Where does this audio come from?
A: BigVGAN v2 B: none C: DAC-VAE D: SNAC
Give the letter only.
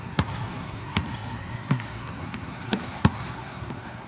D